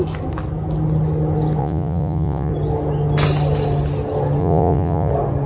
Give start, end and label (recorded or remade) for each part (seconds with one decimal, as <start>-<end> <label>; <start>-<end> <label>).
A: 0.0-1.6 recorded; 1.6-2.5 remade; 2.5-4.4 recorded; 4.4-5.1 remade; 5.1-5.5 recorded